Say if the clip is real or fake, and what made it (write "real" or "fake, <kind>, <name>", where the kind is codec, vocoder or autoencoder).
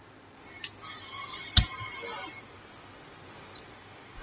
real